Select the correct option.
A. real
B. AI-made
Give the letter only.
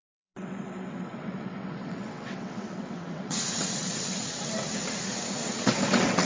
B